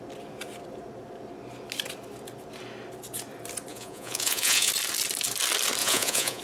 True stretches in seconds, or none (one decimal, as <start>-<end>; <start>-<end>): 0.0-3.7; 4.7-5.8